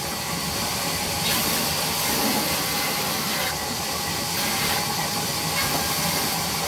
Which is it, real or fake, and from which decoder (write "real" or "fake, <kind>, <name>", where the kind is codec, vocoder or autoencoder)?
real